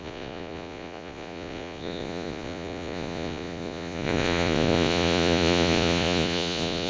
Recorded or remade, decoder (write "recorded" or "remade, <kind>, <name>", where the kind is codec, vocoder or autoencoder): remade, vocoder, Vocos